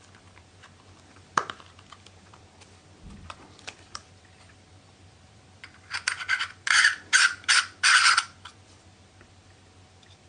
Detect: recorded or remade remade